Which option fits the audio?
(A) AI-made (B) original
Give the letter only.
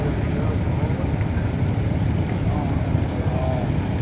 B